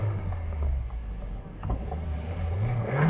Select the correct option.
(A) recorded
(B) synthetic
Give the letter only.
B